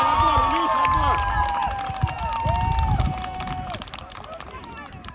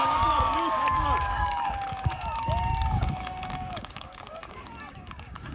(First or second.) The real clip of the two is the first